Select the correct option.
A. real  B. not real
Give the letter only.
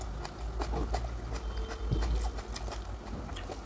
A